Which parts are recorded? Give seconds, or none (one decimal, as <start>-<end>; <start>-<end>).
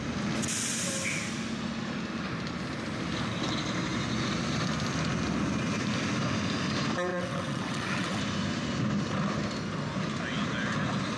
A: 0.0-7.1; 8.2-11.2